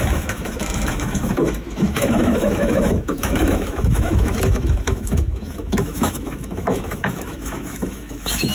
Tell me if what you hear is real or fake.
fake